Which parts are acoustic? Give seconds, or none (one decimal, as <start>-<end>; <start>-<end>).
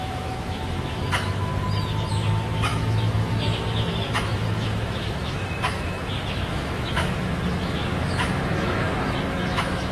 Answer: 1.5-2.1